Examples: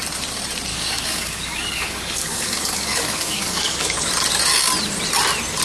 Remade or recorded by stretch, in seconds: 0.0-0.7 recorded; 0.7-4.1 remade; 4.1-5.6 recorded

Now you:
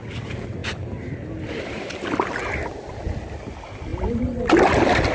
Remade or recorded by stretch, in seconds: 0.0-5.1 recorded

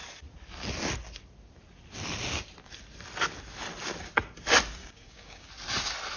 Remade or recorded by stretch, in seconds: 0.0-4.8 recorded; 4.8-5.5 remade; 5.5-6.2 recorded